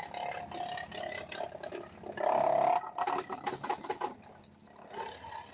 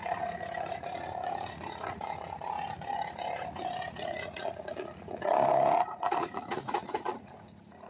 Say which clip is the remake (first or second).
second